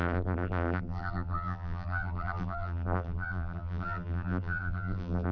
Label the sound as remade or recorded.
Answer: remade